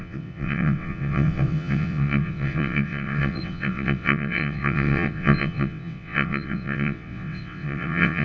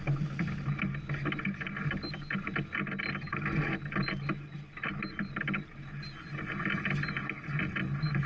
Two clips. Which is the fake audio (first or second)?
first